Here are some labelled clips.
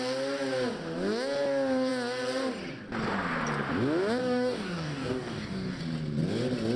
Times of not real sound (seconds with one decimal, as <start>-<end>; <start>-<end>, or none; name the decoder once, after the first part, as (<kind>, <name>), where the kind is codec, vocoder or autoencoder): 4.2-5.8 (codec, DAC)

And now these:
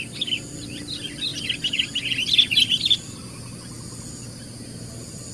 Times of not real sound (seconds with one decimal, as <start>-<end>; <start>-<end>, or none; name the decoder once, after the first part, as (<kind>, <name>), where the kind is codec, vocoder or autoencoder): none

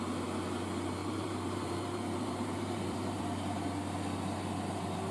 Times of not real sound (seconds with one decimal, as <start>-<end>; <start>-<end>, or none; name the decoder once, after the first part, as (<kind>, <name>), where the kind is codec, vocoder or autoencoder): 1.0-3.2 (vocoder, BigVGAN v2)